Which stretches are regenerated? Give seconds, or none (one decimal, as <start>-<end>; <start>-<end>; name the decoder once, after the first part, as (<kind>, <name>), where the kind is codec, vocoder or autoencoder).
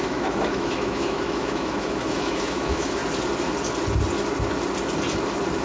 0.0-3.0 (autoencoder, DAC-VAE)